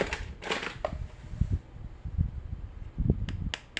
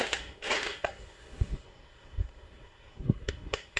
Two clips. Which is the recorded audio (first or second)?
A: first